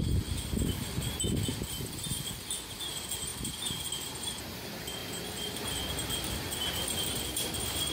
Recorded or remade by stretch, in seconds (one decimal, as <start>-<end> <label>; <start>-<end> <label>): 0.0-1.5 recorded; 1.5-2.3 remade; 2.3-3.3 recorded; 3.3-3.9 remade; 3.9-7.9 recorded